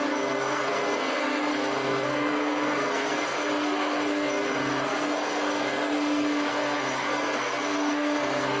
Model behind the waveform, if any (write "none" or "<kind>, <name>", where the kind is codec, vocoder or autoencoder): codec, SNAC